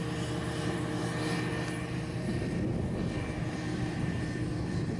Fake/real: real